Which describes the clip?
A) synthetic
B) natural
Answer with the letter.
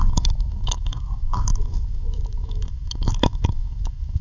A